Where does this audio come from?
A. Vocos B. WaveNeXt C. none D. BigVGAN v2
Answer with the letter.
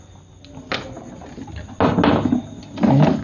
C